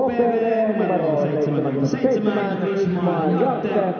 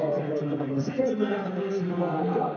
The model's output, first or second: second